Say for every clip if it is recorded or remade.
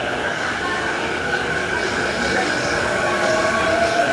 remade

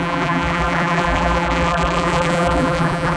remade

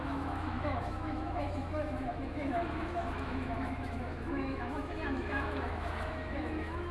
remade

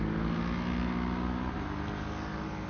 recorded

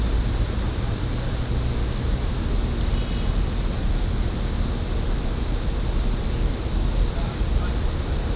recorded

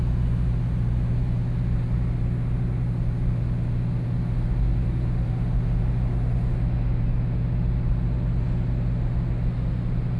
recorded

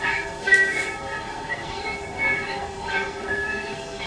remade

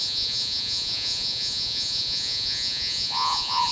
remade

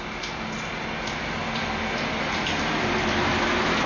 recorded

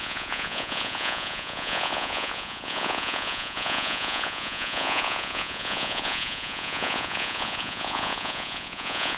remade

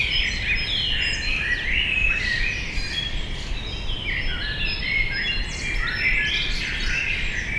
recorded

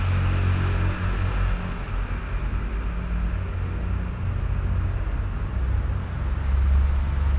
recorded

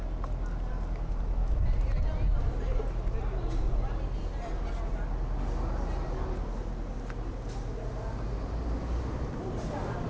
recorded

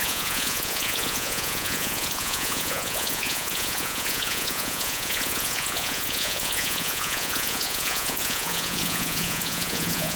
remade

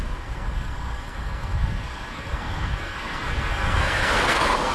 remade